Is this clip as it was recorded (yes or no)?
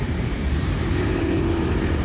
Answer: no